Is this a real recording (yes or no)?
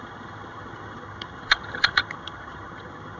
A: no